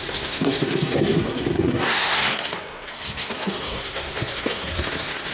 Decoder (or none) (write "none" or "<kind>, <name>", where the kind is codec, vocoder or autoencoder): codec, SNAC